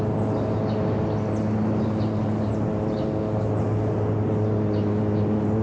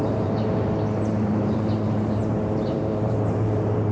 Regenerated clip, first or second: second